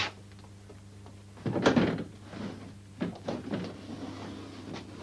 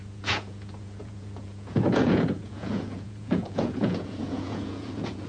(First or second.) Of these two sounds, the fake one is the second